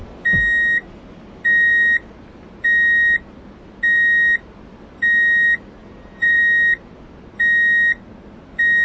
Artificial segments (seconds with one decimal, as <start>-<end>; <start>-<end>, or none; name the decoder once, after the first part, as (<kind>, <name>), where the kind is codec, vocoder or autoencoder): 5.8-6.4 (vocoder, Vocos)